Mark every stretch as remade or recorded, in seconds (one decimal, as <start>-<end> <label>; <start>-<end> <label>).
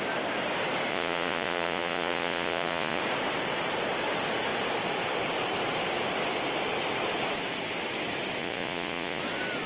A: 0.0-0.9 recorded; 0.9-3.0 remade; 3.0-8.4 recorded; 8.4-9.2 remade; 9.2-9.7 recorded